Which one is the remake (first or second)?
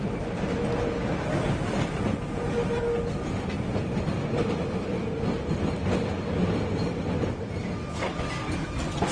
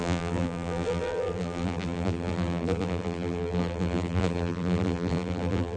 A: second